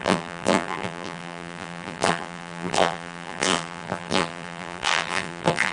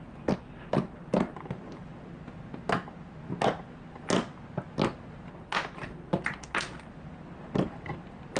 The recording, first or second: second